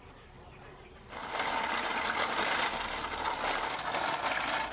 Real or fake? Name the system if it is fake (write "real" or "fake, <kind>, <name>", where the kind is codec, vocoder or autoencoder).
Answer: real